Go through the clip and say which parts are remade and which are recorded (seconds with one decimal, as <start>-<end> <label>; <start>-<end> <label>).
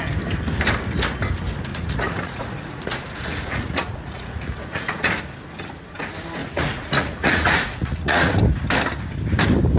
0.0-1.7 recorded; 1.7-5.2 remade; 5.2-6.4 recorded; 6.4-8.4 remade; 8.4-9.8 recorded